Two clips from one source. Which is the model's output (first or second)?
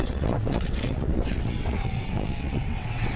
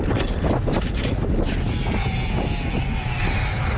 first